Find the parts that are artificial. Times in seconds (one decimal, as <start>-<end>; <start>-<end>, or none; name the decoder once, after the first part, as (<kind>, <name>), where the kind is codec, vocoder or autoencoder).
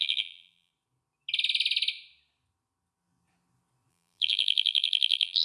0.0-0.7 (vocoder, BigVGAN v2); 3.9-5.4